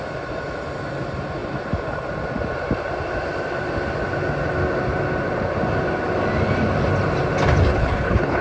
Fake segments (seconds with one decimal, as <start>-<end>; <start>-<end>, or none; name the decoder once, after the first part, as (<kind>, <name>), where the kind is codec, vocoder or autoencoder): 7.7-8.4 (codec, HILCodec)